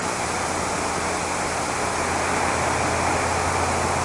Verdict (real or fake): real